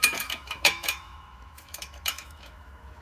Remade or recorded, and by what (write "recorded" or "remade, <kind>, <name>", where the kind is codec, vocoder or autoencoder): remade, autoencoder, DAC-VAE